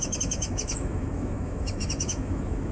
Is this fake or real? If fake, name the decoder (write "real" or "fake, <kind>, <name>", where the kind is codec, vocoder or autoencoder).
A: fake, autoencoder, DAC-VAE